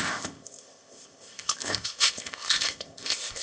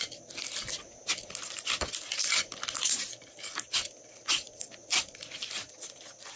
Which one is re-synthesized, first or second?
first